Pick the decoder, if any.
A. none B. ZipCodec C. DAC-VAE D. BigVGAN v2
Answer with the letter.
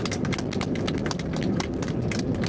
A